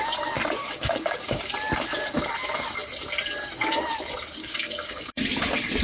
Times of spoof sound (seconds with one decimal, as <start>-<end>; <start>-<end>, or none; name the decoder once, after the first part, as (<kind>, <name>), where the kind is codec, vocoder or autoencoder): 0.6-1.4 (codec, DAC); 4.4-5.2

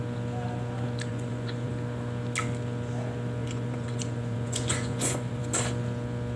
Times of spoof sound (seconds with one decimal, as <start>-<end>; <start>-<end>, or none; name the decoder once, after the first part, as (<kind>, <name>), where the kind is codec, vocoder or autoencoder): 1.1-1.7 (vocoder, Vocos); 3.4-5.4

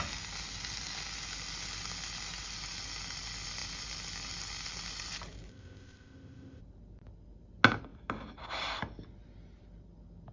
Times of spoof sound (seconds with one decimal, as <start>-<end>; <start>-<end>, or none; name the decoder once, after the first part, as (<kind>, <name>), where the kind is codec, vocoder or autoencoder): 5.5-6.6 (codec, ZipCodec)

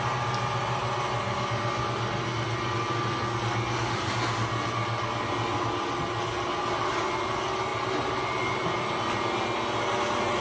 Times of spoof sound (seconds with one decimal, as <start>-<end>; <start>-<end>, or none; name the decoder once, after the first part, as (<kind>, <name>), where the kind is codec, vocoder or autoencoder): none

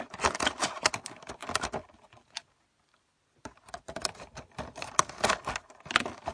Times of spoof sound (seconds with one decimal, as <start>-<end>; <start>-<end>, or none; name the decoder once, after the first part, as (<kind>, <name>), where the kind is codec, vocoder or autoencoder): none

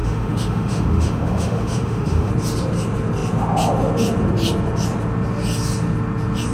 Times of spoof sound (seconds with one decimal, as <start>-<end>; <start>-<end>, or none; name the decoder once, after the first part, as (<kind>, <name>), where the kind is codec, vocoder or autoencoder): 0.0-2.3 (autoencoder, DAC-VAE)